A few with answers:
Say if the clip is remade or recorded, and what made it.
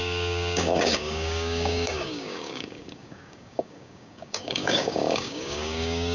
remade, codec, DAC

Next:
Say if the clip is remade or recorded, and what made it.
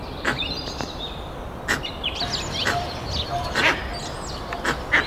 recorded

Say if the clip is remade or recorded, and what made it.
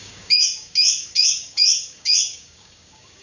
remade, codec, DAC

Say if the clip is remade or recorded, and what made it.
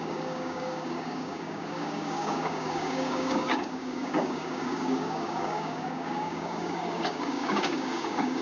remade, codec, DAC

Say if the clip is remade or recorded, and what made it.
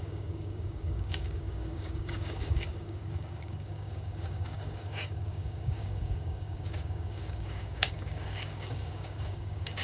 remade, codec, DAC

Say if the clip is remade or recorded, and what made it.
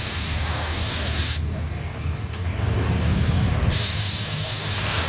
remade, codec, DAC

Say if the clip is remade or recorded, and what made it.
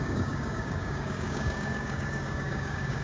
remade, codec, DAC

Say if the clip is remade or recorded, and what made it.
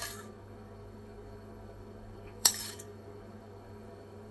remade, codec, DAC